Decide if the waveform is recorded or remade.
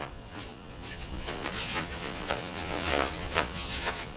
remade